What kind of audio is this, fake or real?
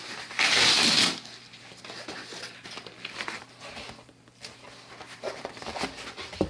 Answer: real